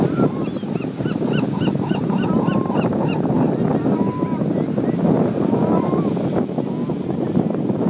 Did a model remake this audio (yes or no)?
no